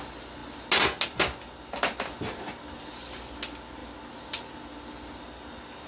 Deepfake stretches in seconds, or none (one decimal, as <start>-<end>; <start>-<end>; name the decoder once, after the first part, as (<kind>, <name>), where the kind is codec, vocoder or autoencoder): none